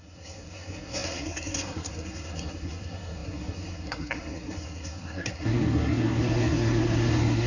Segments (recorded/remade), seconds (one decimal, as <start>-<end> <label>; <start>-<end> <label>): 0.0-7.5 remade